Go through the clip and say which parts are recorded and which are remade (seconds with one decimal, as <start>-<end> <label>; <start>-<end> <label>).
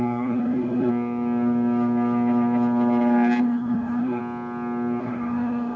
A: 0.0-0.9 remade; 0.9-3.4 recorded; 3.4-4.2 remade; 4.2-5.0 recorded; 5.0-5.8 remade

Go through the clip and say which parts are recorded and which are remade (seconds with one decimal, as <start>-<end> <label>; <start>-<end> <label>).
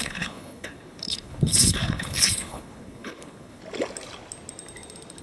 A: 0.0-3.6 remade; 3.6-5.2 recorded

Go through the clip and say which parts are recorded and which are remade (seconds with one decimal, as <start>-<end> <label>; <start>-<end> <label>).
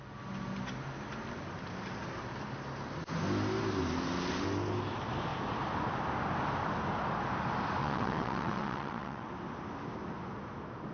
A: 0.0-7.8 recorded; 7.8-9.3 remade; 9.3-10.9 recorded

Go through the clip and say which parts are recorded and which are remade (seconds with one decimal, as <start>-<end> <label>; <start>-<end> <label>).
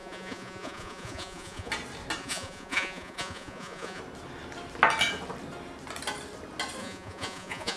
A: 0.0-1.7 remade; 1.7-2.2 recorded; 2.2-4.0 remade; 4.0-6.8 recorded; 6.8-7.8 remade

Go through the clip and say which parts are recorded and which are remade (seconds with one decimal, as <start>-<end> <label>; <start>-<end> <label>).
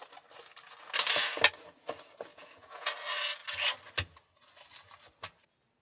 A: 0.0-2.3 recorded; 2.3-2.9 remade; 2.9-5.8 recorded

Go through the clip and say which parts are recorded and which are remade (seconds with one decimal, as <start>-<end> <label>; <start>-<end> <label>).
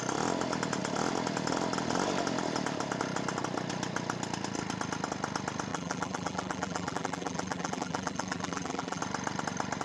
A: 0.0-5.7 recorded; 5.7-9.0 remade; 9.0-9.8 recorded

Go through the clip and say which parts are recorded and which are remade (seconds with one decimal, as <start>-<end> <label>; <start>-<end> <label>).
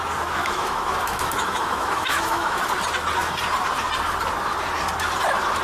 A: 0.0-0.4 recorded; 0.4-2.6 remade; 2.6-5.6 recorded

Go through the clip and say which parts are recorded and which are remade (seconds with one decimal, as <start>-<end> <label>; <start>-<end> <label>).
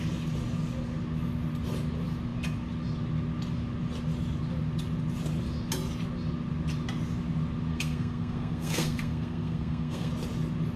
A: 0.0-7.7 recorded; 7.7-10.1 remade; 10.1-10.8 recorded